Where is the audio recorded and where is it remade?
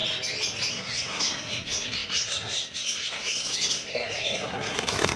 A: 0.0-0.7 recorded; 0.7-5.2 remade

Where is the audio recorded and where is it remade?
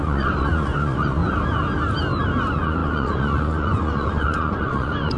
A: 0.0-1.2 remade; 1.2-2.4 recorded; 2.4-5.2 remade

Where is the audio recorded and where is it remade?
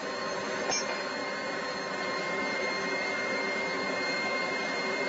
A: 0.0-5.1 recorded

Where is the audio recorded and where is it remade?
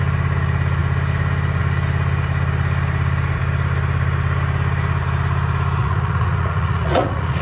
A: 0.0-5.8 recorded; 5.8-7.4 remade